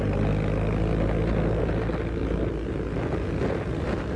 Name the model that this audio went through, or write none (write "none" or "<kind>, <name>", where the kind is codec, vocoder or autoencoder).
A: none